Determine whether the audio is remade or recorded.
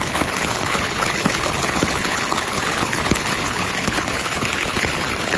remade